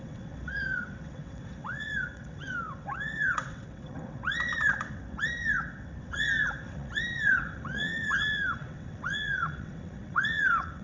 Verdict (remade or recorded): remade